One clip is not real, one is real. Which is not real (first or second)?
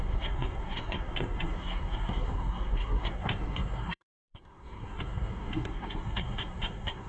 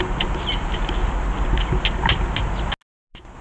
first